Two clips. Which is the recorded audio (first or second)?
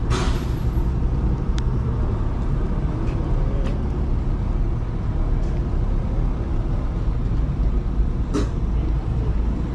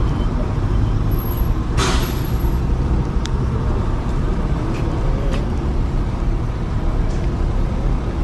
first